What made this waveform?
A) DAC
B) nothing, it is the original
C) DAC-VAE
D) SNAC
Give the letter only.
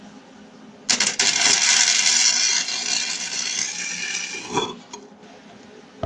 B